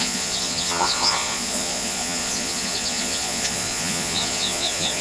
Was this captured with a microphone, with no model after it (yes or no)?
no